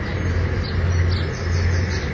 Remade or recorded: recorded